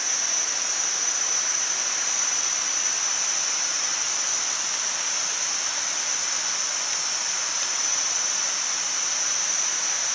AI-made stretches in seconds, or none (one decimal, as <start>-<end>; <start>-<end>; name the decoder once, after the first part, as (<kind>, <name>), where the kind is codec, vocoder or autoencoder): 0.5-2.4 (vocoder, BigVGAN v2)

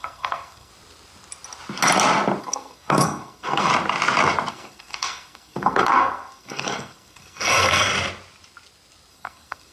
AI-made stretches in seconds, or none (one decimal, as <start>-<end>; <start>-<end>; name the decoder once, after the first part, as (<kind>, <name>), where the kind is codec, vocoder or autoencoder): 0.0-0.7 (codec, SNAC); 2.4-3.7; 4.5-7.9; 9.1-9.7